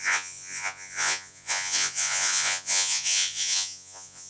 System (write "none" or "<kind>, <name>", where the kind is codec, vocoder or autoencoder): vocoder, Vocos